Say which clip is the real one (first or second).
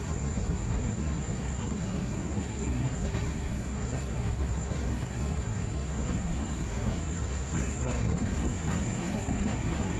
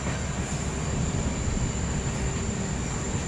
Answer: second